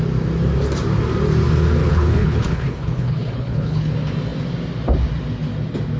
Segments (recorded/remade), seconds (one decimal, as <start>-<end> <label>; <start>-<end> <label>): 0.0-1.8 recorded; 1.8-3.9 remade; 3.9-6.0 recorded